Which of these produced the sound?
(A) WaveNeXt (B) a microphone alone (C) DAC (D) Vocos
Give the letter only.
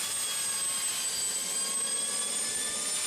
B